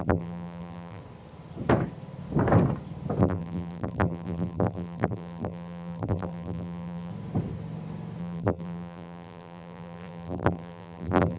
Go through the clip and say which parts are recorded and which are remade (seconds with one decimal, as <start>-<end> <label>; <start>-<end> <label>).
0.0-1.0 remade; 1.0-3.2 recorded; 3.2-7.1 remade; 7.1-8.2 recorded; 8.2-11.4 remade